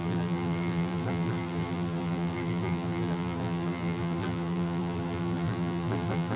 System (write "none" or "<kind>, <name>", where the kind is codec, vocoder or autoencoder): vocoder, BigVGAN v2